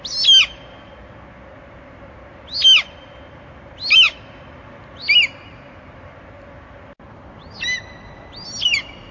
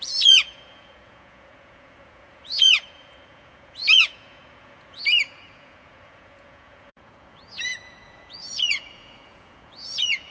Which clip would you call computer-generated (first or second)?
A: second